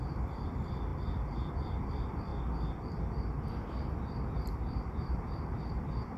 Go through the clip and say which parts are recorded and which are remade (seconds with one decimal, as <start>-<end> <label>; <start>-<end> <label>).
0.0-2.3 remade; 2.3-3.6 recorded; 3.6-6.2 remade